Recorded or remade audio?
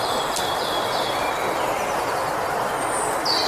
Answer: recorded